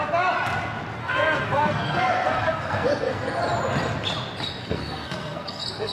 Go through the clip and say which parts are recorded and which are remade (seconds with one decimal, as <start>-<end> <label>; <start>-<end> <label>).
0.0-1.0 recorded; 1.0-3.4 remade; 3.4-4.6 recorded; 4.6-5.9 remade